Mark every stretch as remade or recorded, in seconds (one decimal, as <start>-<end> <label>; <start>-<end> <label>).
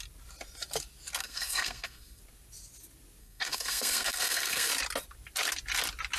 0.0-1.2 recorded; 1.2-2.2 remade; 2.2-3.2 recorded; 3.2-4.7 remade; 4.7-6.2 recorded